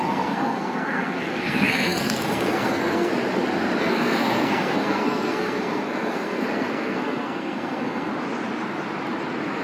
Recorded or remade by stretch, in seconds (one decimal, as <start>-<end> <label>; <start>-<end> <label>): 0.0-3.1 remade; 3.1-3.8 recorded; 3.8-8.1 remade; 8.1-9.6 recorded